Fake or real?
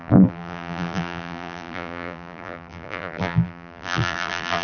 fake